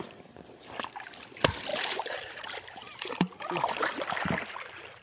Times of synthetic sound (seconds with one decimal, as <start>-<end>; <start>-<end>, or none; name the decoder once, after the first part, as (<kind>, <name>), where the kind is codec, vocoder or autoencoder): 1.7-5.0 (vocoder, BigVGAN v2)